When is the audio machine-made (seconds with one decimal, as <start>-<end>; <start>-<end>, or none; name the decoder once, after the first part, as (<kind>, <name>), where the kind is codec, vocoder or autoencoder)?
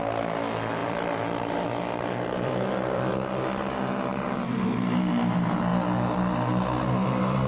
0.8-3.1 (vocoder, BigVGAN v2)